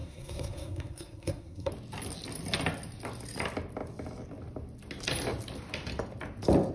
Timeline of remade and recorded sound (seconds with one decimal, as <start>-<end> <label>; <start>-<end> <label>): 0.0-1.7 remade; 1.7-6.7 recorded

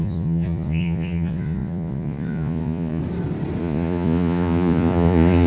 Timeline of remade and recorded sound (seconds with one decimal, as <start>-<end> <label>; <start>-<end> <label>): 0.0-3.0 remade; 3.0-3.6 recorded; 3.6-5.5 remade

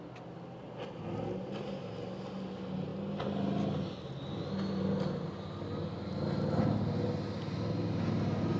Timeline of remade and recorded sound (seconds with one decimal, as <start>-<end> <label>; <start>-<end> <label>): 0.0-8.6 recorded